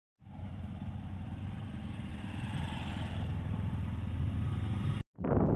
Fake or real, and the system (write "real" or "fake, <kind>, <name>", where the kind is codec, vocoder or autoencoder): real